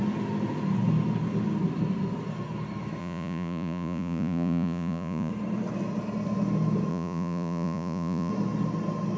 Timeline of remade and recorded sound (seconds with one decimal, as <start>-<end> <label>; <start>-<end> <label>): 0.0-3.0 recorded; 3.0-5.3 remade; 5.3-6.9 recorded; 6.9-8.3 remade; 8.3-9.2 recorded